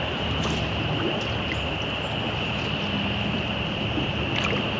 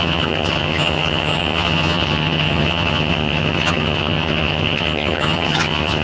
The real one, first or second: first